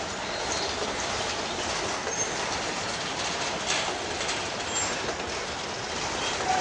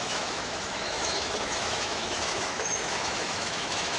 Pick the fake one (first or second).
second